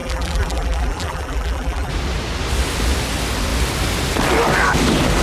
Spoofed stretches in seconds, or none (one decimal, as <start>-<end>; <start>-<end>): 0.0-1.9